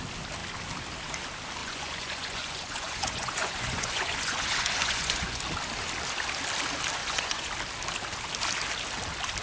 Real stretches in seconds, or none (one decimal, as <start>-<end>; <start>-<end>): 0.0-1.6; 5.4-7.0; 7.5-9.4